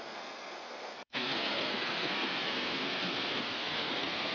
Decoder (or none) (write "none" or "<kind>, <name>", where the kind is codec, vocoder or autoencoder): codec, SNAC